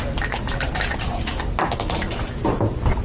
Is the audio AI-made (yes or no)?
no